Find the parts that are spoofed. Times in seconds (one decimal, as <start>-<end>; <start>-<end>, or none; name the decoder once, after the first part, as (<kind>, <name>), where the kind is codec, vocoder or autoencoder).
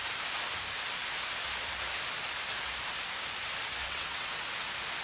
3.8-4.3 (vocoder, WaveNeXt)